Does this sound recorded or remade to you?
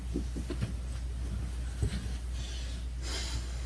recorded